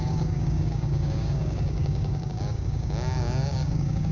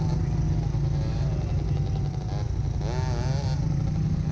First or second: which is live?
second